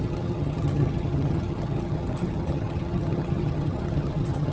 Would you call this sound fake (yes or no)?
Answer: yes